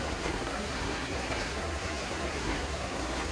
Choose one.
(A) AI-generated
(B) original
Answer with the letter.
A